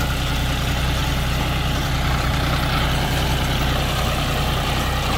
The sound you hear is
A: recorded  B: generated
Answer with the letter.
A